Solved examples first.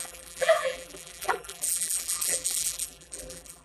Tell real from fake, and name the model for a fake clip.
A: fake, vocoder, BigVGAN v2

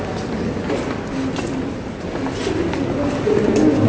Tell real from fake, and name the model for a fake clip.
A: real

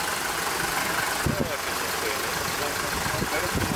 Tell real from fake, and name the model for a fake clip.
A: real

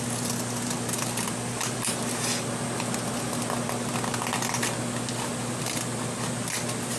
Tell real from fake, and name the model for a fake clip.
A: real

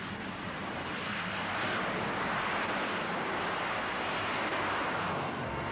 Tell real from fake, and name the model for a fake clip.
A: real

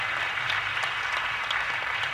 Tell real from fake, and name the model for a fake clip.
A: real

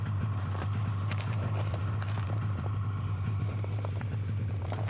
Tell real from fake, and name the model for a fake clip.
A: fake, vocoder, BigVGAN v2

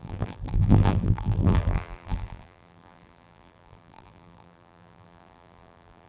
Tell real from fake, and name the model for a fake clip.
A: fake, vocoder, BigVGAN v2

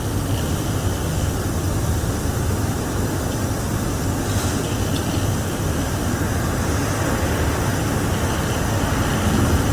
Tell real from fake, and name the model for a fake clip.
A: real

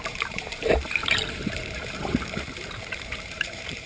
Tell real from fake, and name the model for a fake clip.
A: fake, vocoder, BigVGAN v2